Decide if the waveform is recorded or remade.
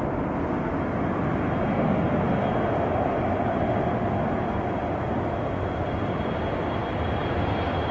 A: recorded